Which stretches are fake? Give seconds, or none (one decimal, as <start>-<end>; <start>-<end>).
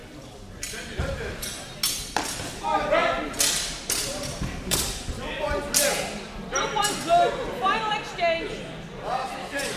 0.0-1.4; 3.0-5.1